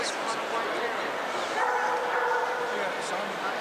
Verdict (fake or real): real